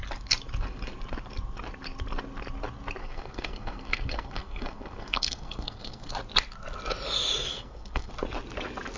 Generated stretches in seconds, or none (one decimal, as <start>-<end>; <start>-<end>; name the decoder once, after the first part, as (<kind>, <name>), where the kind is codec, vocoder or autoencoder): 3.0-6.1 (codec, SNAC); 7.5-8.1